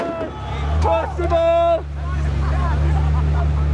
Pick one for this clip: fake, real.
real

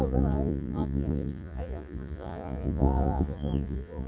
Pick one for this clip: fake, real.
fake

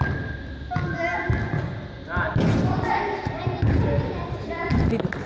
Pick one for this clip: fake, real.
real